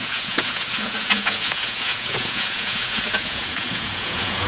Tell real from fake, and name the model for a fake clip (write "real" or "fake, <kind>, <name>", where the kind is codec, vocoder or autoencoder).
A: fake, vocoder, Vocos